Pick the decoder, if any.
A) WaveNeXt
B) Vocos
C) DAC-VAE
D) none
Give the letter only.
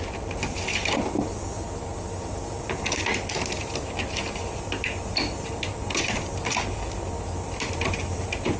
D